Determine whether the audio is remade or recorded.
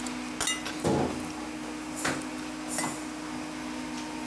recorded